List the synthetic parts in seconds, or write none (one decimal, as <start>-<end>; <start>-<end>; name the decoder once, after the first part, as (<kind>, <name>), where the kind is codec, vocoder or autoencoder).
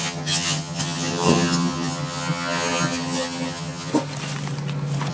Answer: 0.0-3.9 (vocoder, HiFi-GAN)